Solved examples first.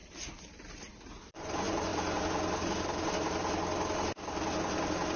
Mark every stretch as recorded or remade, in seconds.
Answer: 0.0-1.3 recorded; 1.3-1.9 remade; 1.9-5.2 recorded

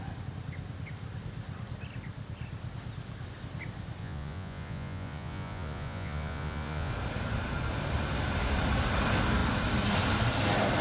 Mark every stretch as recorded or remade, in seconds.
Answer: 0.0-4.0 recorded; 4.0-6.9 remade; 6.9-10.8 recorded

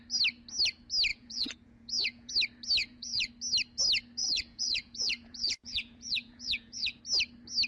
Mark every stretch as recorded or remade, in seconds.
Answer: 0.0-1.1 recorded; 1.1-2.3 remade; 2.3-2.8 recorded; 2.8-3.3 remade; 3.3-4.2 recorded; 4.2-7.0 remade; 7.0-7.7 recorded

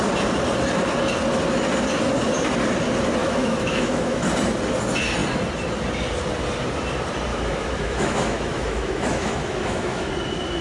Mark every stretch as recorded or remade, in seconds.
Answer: 0.0-3.2 recorded; 3.2-4.3 remade; 4.3-7.3 recorded; 7.3-10.1 remade; 10.1-10.6 recorded

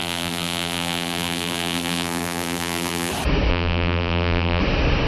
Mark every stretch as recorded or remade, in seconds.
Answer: 0.0-3.1 remade; 3.1-3.5 recorded; 3.5-4.6 remade; 4.6-5.1 recorded

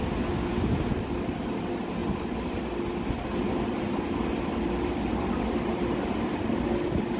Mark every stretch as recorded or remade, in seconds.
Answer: 0.0-7.2 recorded

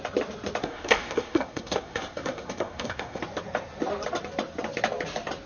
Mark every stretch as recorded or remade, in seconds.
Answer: 0.0-0.6 recorded; 0.6-3.2 remade; 3.2-5.5 recorded

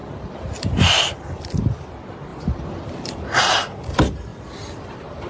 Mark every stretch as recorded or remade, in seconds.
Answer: 0.0-0.6 remade; 0.6-2.3 recorded; 2.3-3.4 remade; 3.4-4.3 recorded; 4.3-5.3 remade